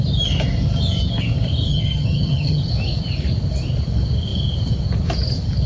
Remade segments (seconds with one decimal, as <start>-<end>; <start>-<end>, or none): 1.7-2.7